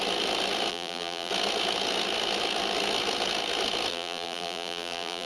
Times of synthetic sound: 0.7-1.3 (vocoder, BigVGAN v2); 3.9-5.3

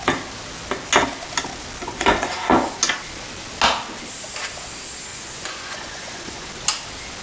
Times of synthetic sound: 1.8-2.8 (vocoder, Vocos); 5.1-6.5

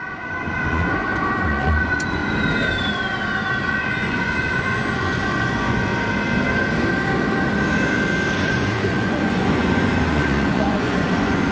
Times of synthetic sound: 0.0-2.2 (vocoder, Vocos); 3.6-5.9; 8.4-11.5